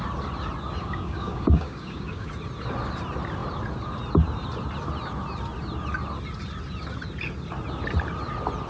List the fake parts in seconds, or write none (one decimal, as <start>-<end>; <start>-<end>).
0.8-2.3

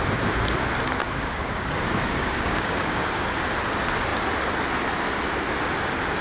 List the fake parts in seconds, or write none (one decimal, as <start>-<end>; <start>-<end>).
1.0-3.3

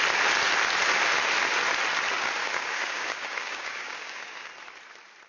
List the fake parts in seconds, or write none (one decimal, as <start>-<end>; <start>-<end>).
2.4-4.5